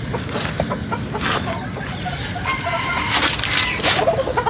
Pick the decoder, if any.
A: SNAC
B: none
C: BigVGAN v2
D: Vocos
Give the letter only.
B